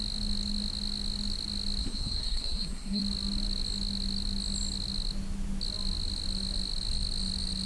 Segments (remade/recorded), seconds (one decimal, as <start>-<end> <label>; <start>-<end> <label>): 0.0-1.8 recorded; 1.8-3.0 remade; 3.0-7.7 recorded